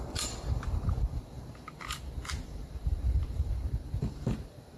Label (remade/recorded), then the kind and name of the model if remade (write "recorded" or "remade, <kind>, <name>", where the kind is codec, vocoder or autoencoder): remade, vocoder, BigVGAN v2